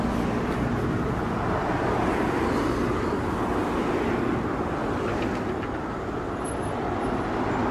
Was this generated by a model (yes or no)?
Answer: no